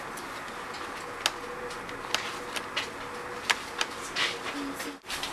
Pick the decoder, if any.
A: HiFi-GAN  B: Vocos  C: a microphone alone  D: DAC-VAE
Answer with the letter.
C